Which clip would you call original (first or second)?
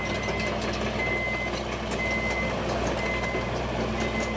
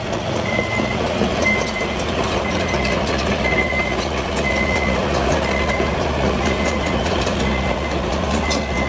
first